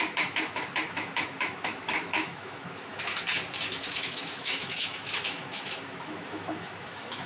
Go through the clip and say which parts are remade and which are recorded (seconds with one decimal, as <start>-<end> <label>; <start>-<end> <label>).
0.0-3.1 remade; 3.1-3.8 recorded; 3.8-7.3 remade